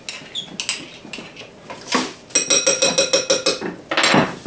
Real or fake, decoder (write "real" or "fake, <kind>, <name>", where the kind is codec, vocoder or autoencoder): real